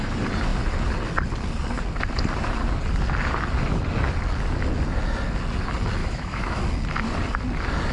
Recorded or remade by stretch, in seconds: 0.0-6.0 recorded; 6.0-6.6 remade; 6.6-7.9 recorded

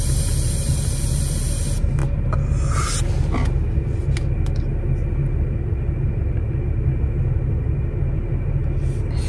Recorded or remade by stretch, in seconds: 0.0-9.3 recorded

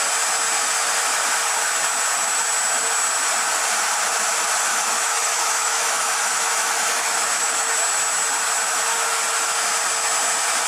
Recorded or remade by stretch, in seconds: 0.0-4.7 recorded; 4.7-7.7 remade; 7.7-10.7 recorded

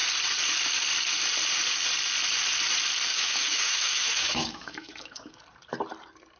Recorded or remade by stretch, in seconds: 0.0-3.1 recorded; 3.1-5.4 remade; 5.4-6.4 recorded

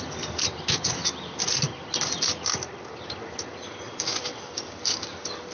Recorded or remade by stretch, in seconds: 0.0-5.5 recorded